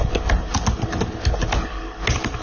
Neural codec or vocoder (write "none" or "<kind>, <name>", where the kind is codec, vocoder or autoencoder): none